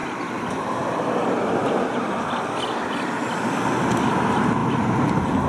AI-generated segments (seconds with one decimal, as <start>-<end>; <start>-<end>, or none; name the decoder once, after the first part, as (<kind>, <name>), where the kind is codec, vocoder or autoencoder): 0.0-3.3 (vocoder, BigVGAN v2); 4.6-5.1